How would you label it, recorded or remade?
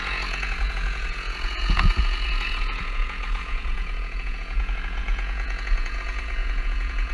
remade